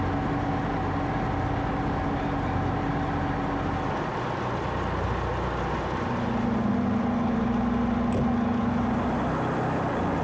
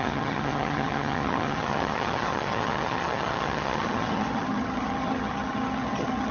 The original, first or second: first